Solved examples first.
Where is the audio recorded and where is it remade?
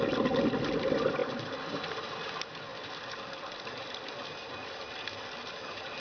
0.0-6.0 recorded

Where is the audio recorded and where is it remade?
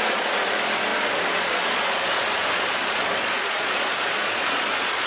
0.0-5.1 remade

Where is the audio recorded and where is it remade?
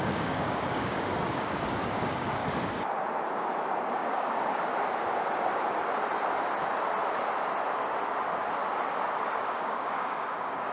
0.0-2.4 remade; 2.4-3.9 recorded; 3.9-4.7 remade; 4.7-9.4 recorded; 9.4-10.7 remade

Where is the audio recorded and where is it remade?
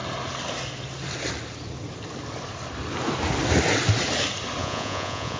0.0-4.6 recorded; 4.6-5.4 remade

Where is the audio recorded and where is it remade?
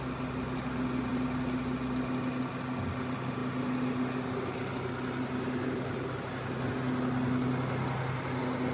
0.0-8.7 recorded